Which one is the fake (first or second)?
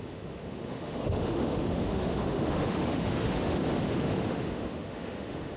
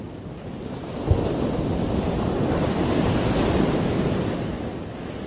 first